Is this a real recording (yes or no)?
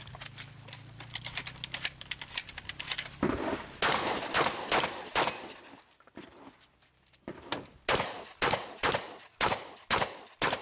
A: no